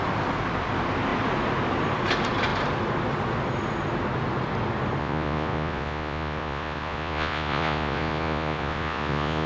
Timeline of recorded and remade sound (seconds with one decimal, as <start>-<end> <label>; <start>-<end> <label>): 0.0-5.0 recorded; 5.0-9.5 remade